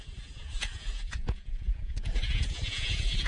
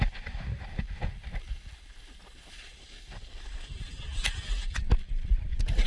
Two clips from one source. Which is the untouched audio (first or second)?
second